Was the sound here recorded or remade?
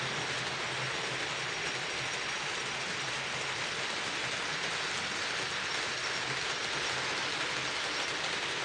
recorded